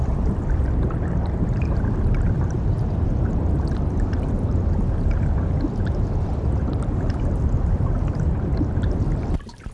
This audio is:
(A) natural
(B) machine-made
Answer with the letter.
B